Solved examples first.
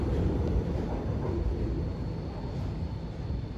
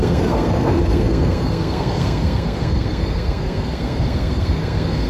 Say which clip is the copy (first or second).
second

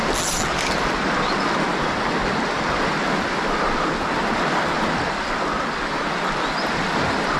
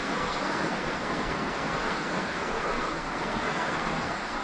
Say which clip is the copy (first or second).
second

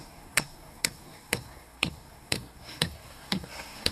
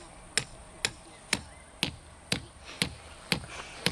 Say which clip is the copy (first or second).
first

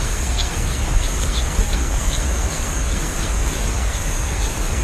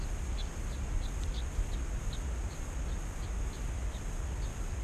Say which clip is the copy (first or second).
first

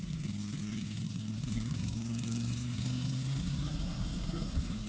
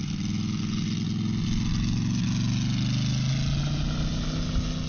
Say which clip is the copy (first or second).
first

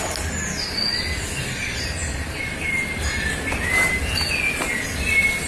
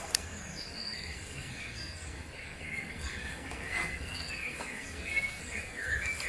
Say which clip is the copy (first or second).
second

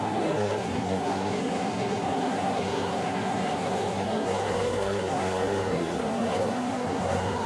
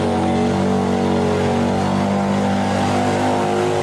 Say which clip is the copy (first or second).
first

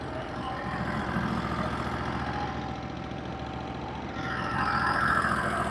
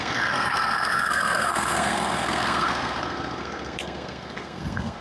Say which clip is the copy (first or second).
second